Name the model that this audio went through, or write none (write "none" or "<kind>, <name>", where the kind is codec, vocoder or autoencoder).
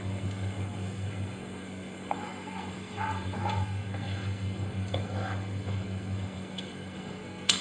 codec, SNAC